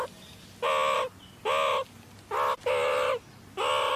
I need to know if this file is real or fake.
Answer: real